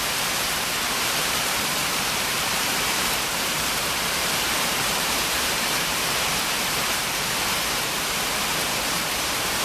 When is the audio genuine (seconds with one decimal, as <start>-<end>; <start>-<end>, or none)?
none